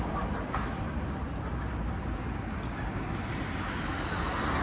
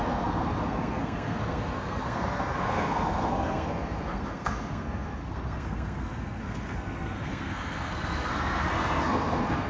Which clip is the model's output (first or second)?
second